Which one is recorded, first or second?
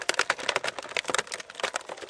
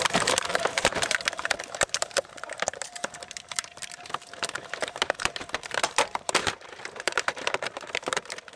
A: first